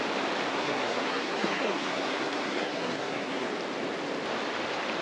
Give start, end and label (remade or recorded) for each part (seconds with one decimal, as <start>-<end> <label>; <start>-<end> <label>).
0.0-0.5 recorded; 0.5-3.5 remade; 3.5-5.0 recorded